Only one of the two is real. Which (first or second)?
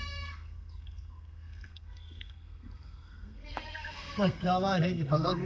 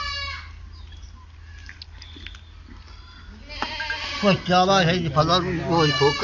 second